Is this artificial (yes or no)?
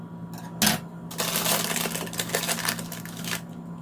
no